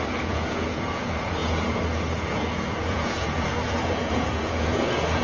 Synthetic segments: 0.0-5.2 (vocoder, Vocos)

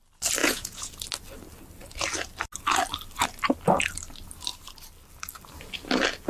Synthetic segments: 0.4-0.9 (vocoder, Vocos)

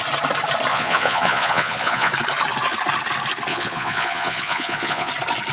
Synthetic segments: 0.7-2.1 (vocoder, Vocos); 3.5-5.1

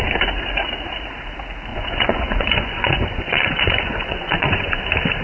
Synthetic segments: 1.7-4.8 (vocoder, Vocos)

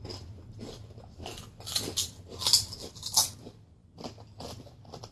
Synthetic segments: none

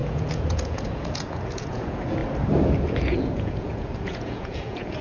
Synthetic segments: 0.0-2.2 (vocoder, Vocos); 2.7-5.0